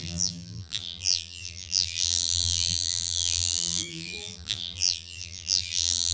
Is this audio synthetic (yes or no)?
yes